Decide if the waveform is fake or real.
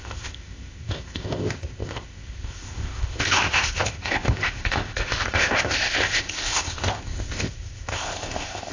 fake